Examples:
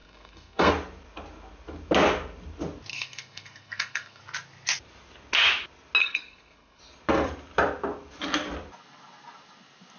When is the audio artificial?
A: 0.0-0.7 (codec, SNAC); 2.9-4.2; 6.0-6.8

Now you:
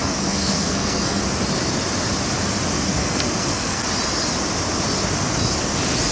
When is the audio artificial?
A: 0.0-1.2 (codec, SNAC); 2.9-3.8

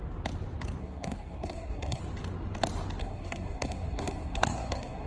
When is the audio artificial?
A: 0.8-2.0 (codec, SNAC); 3.0-5.1

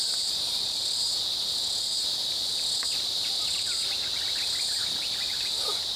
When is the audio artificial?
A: none

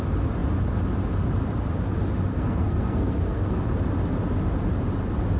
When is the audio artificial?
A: 2.3-3.6 (codec, SNAC)

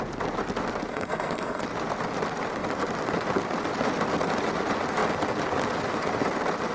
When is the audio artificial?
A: 0.9-1.6 (codec, SNAC)

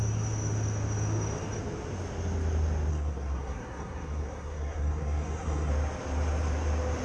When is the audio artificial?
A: 2.9-5.7 (codec, SNAC)

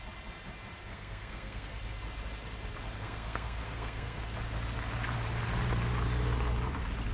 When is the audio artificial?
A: 0.9-1.8 (codec, SNAC); 3.0-4.2